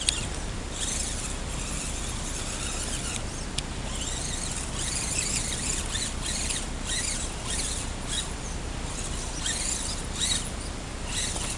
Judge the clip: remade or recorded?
remade